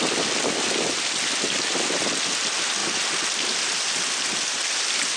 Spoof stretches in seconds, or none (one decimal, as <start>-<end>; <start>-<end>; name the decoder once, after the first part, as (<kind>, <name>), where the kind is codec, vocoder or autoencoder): none